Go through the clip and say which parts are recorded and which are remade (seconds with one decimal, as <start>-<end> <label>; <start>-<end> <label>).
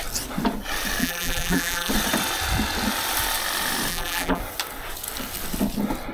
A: 0.0-1.0 recorded; 1.0-1.9 remade; 1.9-3.9 recorded; 3.9-4.4 remade; 4.4-6.1 recorded